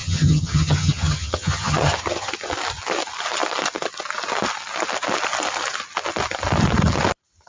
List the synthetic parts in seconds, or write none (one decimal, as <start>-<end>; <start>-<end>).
0.0-2.3

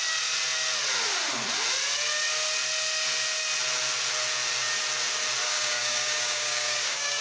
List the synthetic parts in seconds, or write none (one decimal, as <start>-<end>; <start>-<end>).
5.4-7.2

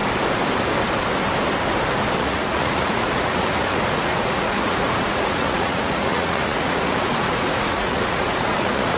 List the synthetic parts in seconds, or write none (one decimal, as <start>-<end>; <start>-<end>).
2.2-9.0

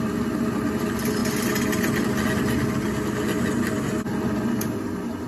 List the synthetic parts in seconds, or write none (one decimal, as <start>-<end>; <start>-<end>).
none

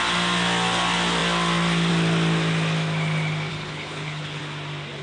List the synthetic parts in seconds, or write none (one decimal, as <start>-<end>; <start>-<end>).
3.5-4.4

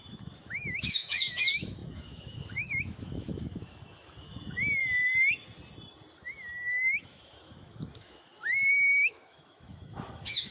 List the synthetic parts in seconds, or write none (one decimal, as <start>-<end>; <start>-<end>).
0.0-4.8; 6.2-10.5

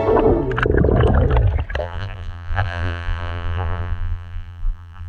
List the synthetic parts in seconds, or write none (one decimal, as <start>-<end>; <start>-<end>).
1.8-5.1

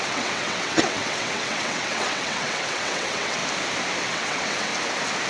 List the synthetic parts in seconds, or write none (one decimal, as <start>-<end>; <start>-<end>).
0.0-3.4; 4.0-4.7